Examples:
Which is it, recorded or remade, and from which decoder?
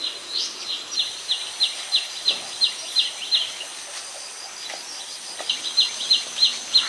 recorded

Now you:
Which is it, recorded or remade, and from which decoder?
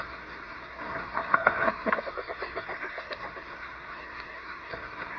remade, codec, SNAC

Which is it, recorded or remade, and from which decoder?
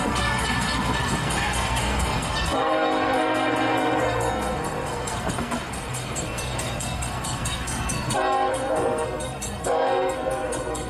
remade, codec, SNAC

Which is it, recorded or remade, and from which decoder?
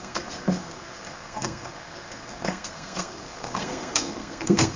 remade, codec, SNAC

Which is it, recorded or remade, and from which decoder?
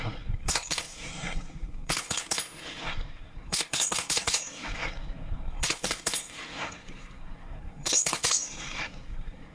remade, codec, SNAC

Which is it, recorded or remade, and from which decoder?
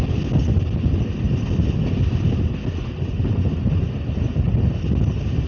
recorded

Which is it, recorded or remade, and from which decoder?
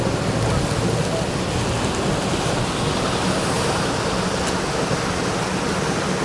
recorded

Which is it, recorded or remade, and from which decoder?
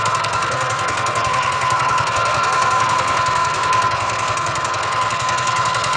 remade, codec, SNAC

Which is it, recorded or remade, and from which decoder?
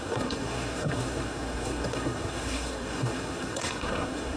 remade, codec, SNAC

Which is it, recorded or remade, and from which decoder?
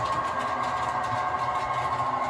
recorded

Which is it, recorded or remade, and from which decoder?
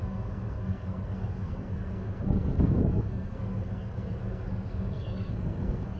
remade, codec, SNAC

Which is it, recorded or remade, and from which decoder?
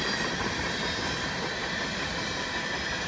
recorded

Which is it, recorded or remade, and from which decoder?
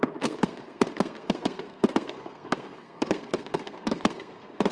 remade, codec, SNAC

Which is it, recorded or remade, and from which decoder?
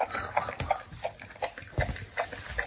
recorded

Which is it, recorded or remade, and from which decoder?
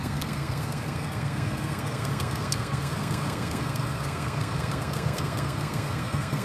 remade, codec, SNAC